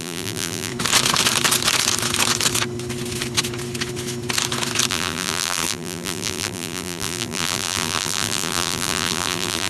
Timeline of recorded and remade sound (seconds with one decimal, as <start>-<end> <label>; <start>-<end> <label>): 0.0-0.7 remade; 0.7-4.9 recorded; 4.9-9.7 remade